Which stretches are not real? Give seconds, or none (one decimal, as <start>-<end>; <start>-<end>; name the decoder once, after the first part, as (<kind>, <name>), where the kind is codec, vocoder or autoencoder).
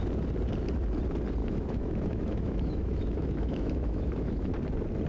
1.4-4.5 (autoencoder, DAC-VAE)